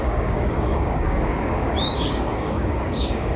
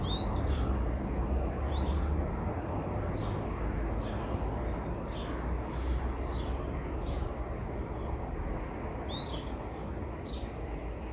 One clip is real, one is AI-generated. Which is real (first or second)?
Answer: second